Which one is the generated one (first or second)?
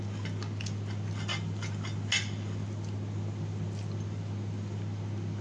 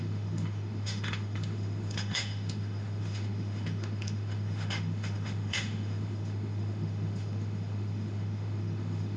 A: second